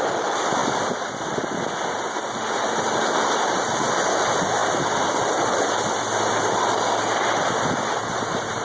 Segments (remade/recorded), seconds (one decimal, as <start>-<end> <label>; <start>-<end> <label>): 0.0-8.6 recorded